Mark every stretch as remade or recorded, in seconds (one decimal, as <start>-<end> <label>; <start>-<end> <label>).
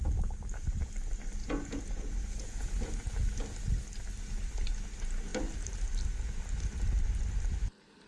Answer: 0.0-1.4 recorded; 1.4-2.8 remade; 2.8-8.1 recorded